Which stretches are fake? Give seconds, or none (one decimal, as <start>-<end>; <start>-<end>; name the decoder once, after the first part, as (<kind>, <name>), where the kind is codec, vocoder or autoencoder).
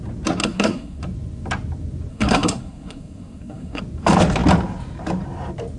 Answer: 0.4-1.0 (codec, SNAC); 2.1-3.8